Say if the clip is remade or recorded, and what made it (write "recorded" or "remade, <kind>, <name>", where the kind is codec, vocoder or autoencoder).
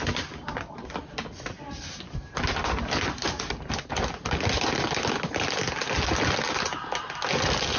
recorded